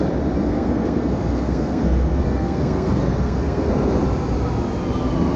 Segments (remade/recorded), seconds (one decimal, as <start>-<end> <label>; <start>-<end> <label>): 0.0-0.5 recorded; 0.5-3.7 remade; 3.7-5.4 recorded